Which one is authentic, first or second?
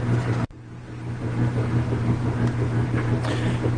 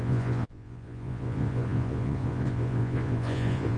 first